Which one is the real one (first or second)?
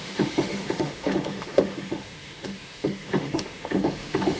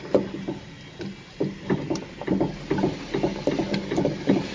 second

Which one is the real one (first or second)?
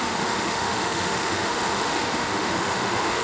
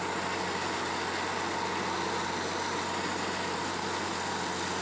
second